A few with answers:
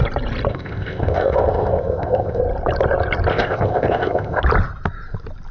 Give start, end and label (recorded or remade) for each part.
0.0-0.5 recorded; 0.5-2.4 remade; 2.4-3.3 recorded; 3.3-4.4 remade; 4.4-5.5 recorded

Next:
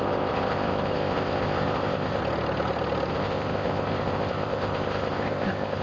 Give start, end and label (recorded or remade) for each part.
0.0-2.2 remade; 2.2-3.1 recorded; 3.1-5.8 remade

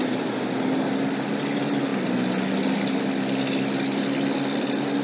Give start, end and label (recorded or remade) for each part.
0.0-5.0 recorded

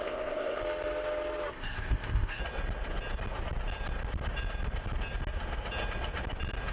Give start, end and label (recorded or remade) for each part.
0.0-0.6 remade; 0.6-1.5 recorded; 1.5-2.4 remade; 2.4-6.7 recorded

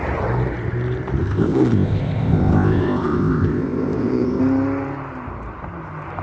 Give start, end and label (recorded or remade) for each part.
0.0-1.2 recorded; 1.2-4.4 remade; 4.4-6.2 recorded

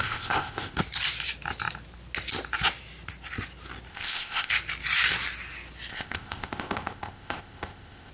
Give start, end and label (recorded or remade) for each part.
0.0-0.8 remade; 0.8-3.9 recorded; 3.9-4.5 remade; 4.5-5.9 recorded; 5.9-8.1 remade

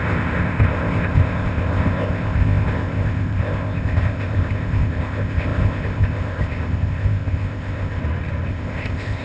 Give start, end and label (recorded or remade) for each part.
0.0-8.0 remade; 8.0-8.5 recorded; 8.5-9.2 remade

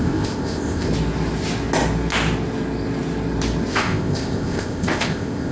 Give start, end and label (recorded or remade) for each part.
0.0-0.9 remade; 0.9-3.7 recorded; 3.7-5.5 remade